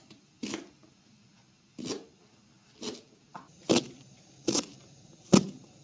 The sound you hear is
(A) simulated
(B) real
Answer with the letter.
B